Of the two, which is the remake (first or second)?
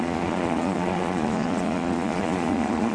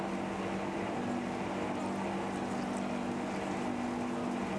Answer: first